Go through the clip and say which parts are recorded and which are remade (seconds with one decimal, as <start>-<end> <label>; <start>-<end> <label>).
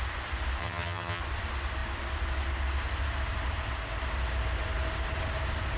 0.0-0.6 recorded; 0.6-1.2 remade; 1.2-5.8 recorded